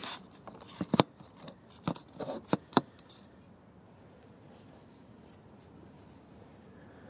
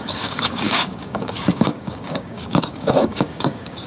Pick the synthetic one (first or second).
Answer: second